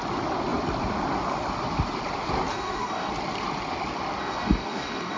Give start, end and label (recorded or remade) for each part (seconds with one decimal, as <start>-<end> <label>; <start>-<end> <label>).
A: 0.0-2.5 recorded; 2.5-3.1 remade; 3.1-4.2 recorded; 4.2-5.2 remade